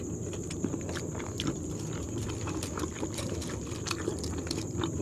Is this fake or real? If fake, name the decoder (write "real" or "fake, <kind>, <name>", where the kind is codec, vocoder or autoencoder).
fake, vocoder, BigVGAN v2